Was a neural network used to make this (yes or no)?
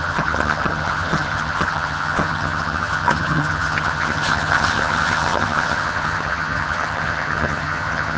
yes